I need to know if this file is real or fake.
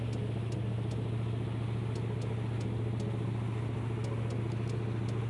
real